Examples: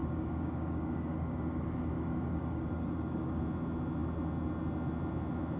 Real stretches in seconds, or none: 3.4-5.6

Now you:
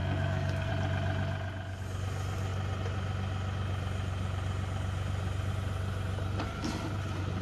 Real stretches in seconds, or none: 0.7-7.4

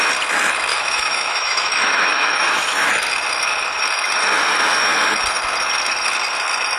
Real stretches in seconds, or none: 0.0-0.7; 2.9-6.8

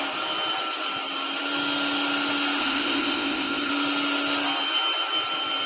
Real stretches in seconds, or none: 0.0-2.6; 3.7-5.7

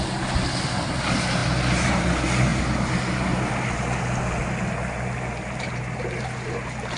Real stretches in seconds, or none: 0.0-7.0

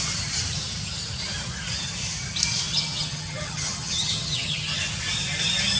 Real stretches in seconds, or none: 0.0-2.7; 4.8-5.8